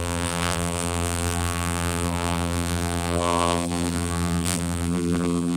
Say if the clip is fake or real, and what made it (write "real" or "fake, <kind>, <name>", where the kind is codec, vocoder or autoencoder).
fake, vocoder, BigVGAN v2